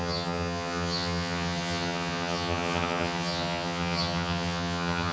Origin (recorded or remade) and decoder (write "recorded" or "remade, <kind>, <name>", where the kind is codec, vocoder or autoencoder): remade, vocoder, HiFi-GAN